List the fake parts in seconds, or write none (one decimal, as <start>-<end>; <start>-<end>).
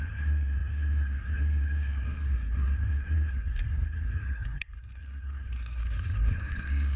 0.0-7.0